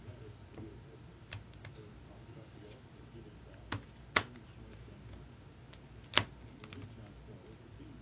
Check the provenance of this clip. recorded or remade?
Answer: recorded